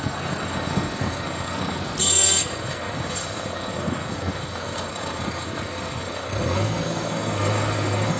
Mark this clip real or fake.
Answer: fake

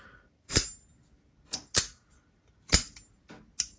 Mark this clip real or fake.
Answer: real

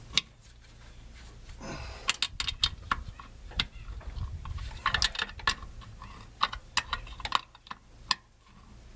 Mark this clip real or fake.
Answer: real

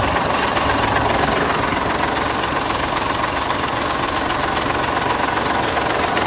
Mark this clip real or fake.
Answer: real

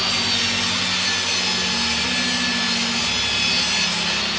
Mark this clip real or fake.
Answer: real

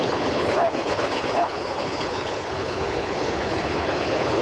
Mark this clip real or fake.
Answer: fake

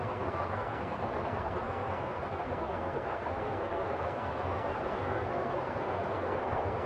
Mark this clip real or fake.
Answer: fake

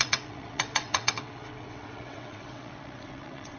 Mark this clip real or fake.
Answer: fake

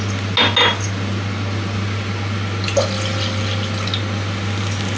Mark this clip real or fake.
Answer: real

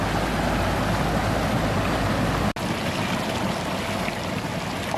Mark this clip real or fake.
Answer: real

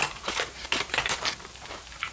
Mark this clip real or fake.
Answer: fake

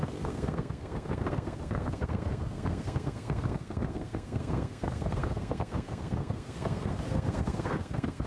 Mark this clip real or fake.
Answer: fake